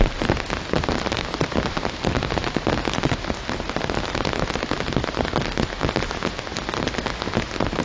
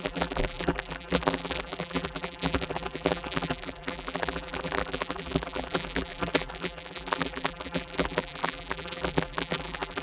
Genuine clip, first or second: first